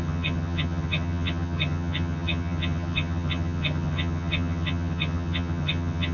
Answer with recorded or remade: remade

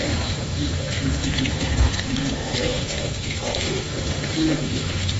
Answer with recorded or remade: remade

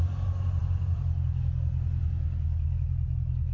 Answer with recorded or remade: recorded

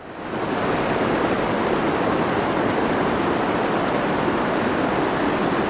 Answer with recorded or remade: recorded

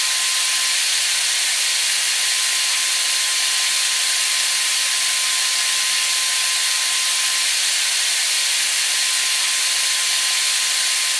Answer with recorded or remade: recorded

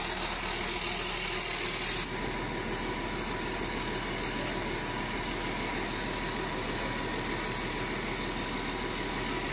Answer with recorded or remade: recorded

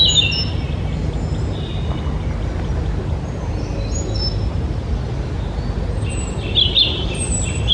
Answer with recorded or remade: recorded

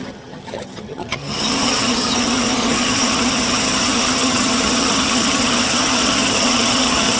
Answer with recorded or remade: remade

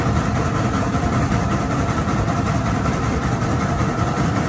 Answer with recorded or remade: remade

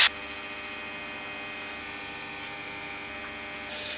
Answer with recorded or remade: recorded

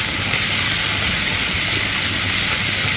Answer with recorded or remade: recorded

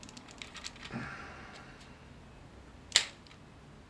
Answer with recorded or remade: recorded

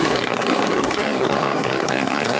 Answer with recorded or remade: remade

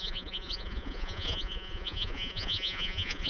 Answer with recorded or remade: remade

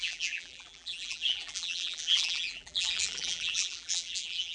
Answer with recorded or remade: remade